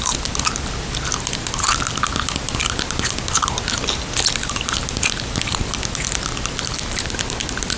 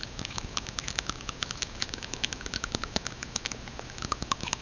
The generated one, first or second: second